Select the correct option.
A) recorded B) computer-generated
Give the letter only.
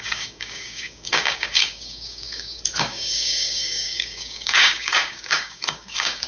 B